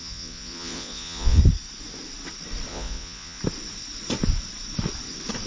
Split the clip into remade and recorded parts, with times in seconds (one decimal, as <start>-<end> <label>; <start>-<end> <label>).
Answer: 0.0-1.4 remade; 1.4-2.7 recorded; 2.7-3.4 remade; 3.4-5.5 recorded